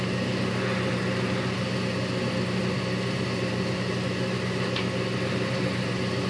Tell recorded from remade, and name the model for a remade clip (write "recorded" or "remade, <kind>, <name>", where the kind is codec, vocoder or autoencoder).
recorded